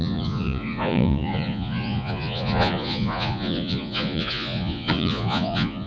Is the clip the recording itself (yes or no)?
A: no